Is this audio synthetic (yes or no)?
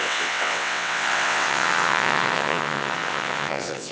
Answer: yes